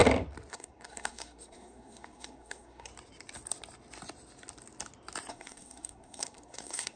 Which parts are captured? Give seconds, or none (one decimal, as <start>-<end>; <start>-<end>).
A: 0.0-0.5; 2.9-5.3

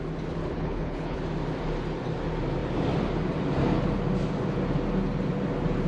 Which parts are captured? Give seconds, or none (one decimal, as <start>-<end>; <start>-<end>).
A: 0.0-0.4; 1.2-5.9

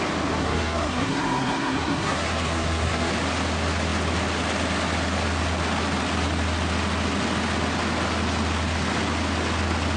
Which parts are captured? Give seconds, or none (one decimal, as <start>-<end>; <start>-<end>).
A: 0.0-0.4; 3.1-10.0

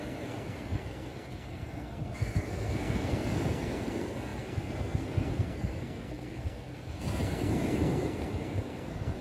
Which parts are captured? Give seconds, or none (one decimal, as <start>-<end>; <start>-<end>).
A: none